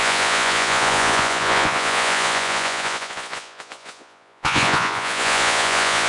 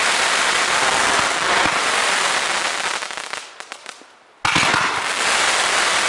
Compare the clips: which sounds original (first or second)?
second